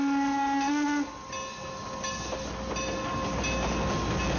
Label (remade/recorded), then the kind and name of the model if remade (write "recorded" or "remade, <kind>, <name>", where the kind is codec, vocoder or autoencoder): recorded